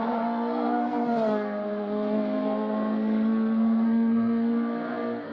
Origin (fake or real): fake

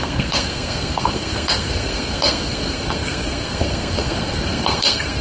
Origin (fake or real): fake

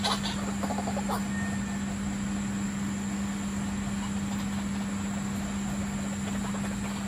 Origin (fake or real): real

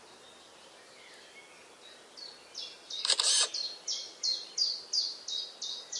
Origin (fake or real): real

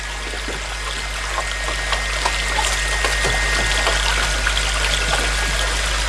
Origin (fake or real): real